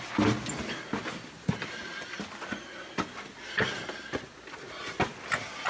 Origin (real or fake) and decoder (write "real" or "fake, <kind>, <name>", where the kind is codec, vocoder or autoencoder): real